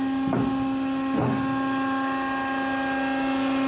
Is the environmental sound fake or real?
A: real